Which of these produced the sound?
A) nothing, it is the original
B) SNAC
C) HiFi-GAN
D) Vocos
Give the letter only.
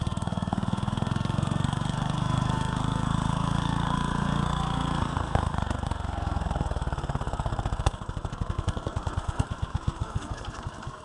B